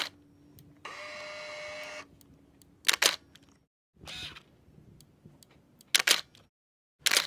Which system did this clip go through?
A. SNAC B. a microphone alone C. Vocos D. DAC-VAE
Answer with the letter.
B